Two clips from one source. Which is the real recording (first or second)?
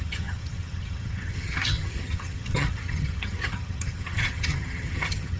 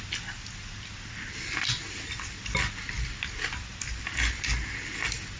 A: second